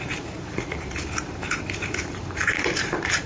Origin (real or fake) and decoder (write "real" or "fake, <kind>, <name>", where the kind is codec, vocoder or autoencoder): fake, vocoder, BigVGAN v2